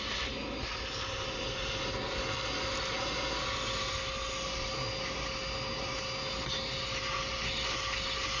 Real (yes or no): yes